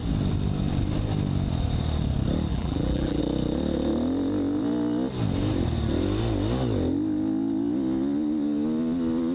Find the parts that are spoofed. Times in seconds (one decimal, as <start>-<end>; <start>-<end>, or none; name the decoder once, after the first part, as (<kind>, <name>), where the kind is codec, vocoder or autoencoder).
2.5-3.2 (vocoder, BigVGAN v2)